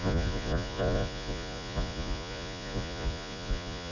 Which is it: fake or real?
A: fake